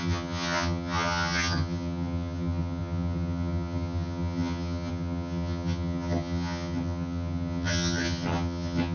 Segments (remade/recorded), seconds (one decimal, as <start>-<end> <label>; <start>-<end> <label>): 0.0-8.9 remade